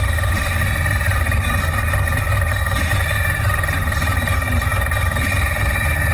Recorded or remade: recorded